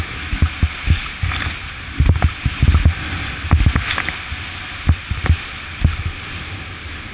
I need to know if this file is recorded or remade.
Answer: recorded